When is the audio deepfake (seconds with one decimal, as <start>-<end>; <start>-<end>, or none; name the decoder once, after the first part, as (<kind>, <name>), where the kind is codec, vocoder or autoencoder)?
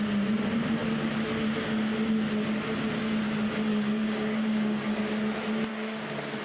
3.7-5.0 (codec, DAC); 5.7-6.4